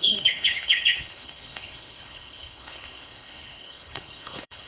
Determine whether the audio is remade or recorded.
remade